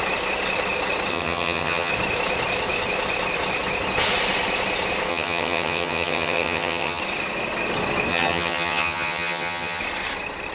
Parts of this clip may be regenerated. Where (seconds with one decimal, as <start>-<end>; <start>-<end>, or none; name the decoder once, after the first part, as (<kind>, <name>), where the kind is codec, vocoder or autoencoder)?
1.1-1.9 (vocoder, HiFi-GAN); 5.1-7.0; 8.1-9.8